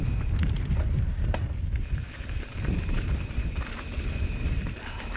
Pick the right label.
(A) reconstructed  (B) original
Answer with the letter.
A